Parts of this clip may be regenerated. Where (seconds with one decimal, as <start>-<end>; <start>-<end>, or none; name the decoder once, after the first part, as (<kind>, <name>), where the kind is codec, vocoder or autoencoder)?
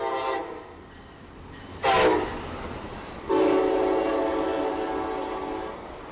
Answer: none